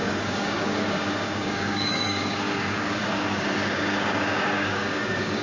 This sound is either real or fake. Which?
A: fake